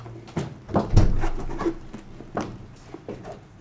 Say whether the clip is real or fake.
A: real